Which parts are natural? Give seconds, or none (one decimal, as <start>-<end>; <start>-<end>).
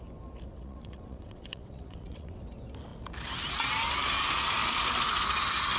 0.0-0.5; 2.4-5.8